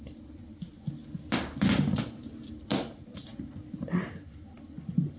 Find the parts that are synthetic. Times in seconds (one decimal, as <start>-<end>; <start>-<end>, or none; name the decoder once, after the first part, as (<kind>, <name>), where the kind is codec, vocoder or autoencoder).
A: none